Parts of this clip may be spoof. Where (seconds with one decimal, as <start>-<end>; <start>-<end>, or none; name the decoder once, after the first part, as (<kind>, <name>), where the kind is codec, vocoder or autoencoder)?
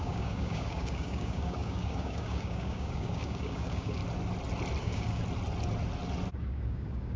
0.0-4.0 (codec, DAC); 4.8-5.2; 6.4-7.2